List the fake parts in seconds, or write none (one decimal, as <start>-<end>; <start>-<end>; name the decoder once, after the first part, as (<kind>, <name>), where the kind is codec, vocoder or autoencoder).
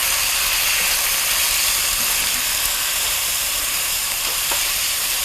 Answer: 2.8-5.2 (vocoder, BigVGAN v2)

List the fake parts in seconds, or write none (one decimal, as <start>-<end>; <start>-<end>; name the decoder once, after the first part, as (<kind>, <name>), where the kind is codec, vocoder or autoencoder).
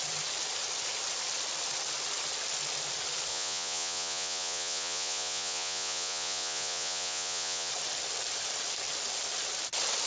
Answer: 3.3-7.7 (vocoder, Vocos)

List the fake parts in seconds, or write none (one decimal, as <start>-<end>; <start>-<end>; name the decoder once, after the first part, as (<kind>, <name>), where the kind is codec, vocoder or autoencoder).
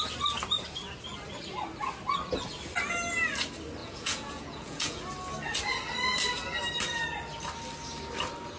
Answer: 3.8-5.0 (vocoder, Vocos)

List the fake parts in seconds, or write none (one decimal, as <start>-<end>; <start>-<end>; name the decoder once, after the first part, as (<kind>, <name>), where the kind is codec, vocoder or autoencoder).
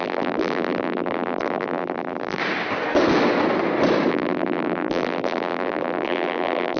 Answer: 0.0-2.4 (vocoder, BigVGAN v2); 4.1-6.8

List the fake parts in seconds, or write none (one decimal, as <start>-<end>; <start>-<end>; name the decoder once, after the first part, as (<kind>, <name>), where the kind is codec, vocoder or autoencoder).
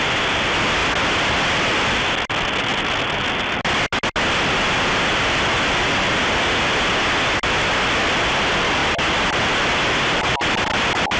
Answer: none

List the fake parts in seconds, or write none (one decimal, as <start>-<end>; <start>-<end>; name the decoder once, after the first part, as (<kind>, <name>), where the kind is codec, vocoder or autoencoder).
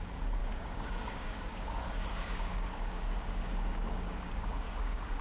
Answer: 0.4-1.7 (codec, DAC); 2.1-5.2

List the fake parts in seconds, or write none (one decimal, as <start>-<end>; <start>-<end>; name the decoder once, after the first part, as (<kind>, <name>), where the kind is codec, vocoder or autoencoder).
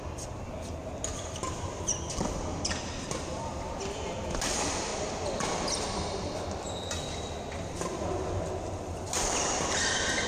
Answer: none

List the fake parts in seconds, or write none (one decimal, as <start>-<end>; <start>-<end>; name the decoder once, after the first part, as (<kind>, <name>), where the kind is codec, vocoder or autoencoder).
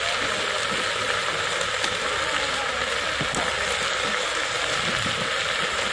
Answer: none